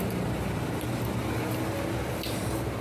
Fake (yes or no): no